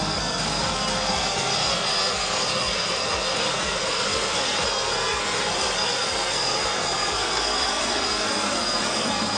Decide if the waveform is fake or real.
fake